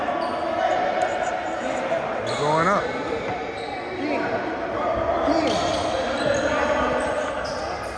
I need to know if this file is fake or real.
real